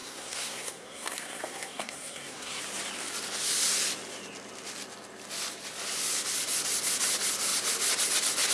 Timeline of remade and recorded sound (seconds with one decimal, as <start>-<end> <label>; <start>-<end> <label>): 0.0-2.6 remade; 2.6-8.5 recorded